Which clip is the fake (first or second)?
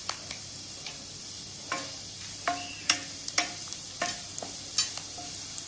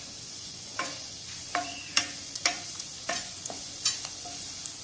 second